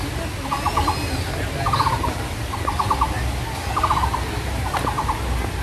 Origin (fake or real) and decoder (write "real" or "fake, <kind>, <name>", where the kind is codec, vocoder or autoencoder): real